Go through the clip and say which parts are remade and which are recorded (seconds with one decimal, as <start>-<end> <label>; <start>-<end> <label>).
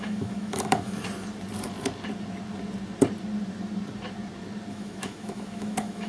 0.0-1.0 remade; 1.0-4.7 recorded; 4.7-6.1 remade